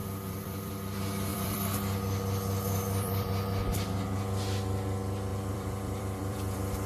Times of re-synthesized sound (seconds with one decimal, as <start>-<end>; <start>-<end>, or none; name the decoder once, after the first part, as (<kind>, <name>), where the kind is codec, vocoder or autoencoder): 0.0-0.7 (vocoder, BigVGAN v2); 1.3-3.3; 5.3-6.9